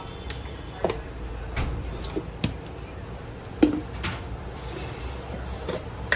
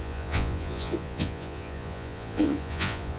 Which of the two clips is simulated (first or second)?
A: second